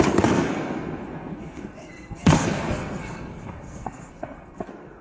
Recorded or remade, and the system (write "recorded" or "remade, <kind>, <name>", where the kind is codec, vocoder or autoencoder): remade, codec, SNAC